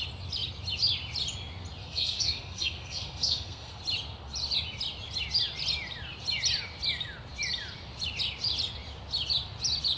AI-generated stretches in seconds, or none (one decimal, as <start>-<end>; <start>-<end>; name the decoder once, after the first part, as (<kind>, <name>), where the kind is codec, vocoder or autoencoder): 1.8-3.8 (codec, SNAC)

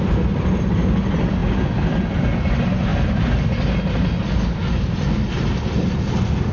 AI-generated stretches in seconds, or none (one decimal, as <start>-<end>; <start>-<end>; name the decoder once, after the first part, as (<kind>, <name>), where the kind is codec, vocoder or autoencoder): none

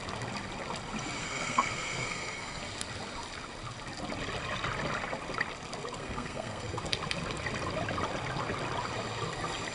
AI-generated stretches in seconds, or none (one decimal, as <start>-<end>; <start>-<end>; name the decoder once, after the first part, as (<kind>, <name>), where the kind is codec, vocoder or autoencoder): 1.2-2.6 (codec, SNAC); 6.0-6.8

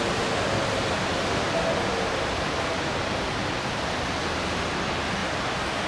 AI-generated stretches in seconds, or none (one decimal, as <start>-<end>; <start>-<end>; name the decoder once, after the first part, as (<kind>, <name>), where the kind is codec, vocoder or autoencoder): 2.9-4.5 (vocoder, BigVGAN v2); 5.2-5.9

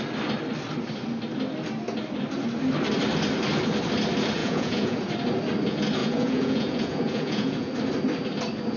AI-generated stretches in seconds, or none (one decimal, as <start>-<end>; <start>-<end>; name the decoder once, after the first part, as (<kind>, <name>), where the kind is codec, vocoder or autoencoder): 4.4-5.0 (vocoder, Vocos); 6.0-7.7